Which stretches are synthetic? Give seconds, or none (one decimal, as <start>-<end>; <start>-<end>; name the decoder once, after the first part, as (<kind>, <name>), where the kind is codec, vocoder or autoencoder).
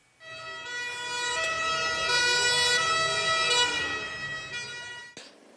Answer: none